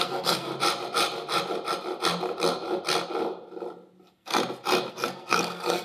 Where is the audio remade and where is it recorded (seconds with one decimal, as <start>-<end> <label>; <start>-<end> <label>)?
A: 0.0-0.5 remade; 0.5-4.0 recorded; 4.0-4.4 remade; 4.4-4.9 recorded; 4.9-5.8 remade